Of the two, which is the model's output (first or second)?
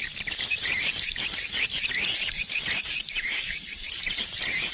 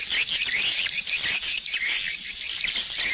first